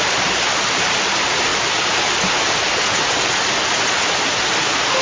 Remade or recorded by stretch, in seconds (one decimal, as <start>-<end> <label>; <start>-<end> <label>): 0.0-5.0 recorded